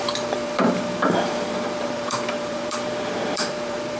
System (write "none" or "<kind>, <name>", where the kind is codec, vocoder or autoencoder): vocoder, BigVGAN v2